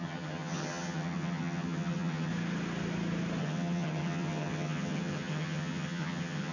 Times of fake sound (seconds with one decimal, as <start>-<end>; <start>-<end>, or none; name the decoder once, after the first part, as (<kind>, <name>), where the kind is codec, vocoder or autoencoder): 0.0-2.3 (vocoder, HiFi-GAN); 3.4-6.5